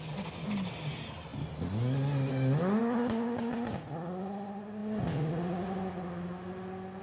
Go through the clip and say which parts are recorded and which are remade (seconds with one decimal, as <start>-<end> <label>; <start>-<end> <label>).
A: 0.0-7.0 recorded